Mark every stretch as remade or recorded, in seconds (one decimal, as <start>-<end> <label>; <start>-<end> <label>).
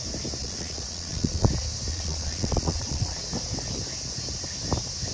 0.0-0.4 recorded; 0.4-1.5 remade; 1.5-1.9 recorded; 1.9-3.2 remade; 3.2-5.1 recorded